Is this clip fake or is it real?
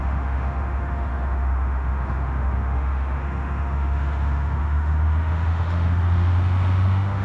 fake